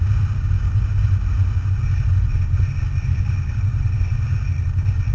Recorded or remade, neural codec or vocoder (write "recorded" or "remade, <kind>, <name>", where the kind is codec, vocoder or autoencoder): recorded